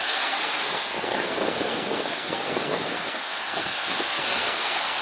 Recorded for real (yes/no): no